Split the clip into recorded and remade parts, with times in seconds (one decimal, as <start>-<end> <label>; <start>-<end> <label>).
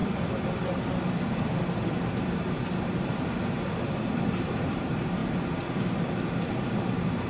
0.0-5.2 remade; 5.2-6.6 recorded; 6.6-7.3 remade